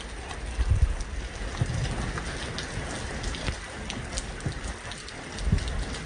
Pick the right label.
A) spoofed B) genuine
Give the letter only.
B